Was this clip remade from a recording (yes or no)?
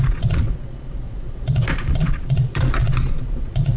yes